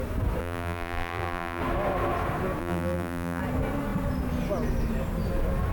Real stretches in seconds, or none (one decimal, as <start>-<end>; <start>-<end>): 0.0-0.4; 1.6-2.6; 3.4-5.7